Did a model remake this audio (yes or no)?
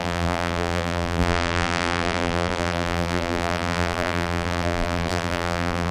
yes